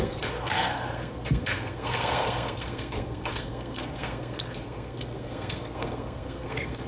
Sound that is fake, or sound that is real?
fake